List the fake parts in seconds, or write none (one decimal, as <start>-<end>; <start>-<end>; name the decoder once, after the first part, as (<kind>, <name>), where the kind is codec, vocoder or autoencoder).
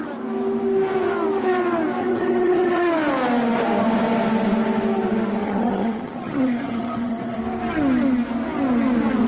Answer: 2.0-2.9 (vocoder, HiFi-GAN); 5.4-7.4